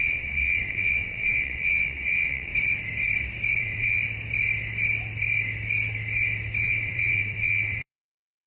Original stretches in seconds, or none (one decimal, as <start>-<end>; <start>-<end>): 2.5-3.6; 4.0-6.6